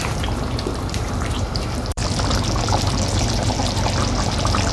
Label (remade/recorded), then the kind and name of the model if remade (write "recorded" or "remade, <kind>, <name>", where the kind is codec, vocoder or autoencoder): remade, vocoder, BigVGAN v2